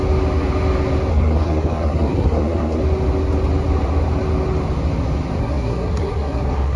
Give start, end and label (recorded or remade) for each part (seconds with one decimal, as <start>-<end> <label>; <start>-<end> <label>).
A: 0.0-1.1 recorded; 1.1-2.8 remade; 2.8-5.4 recorded; 5.4-6.8 remade